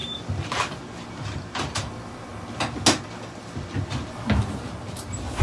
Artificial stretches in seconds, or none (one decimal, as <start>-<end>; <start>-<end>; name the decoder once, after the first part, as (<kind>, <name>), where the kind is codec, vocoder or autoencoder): 1.1-2.3 (vocoder, BigVGAN v2); 4.4-5.4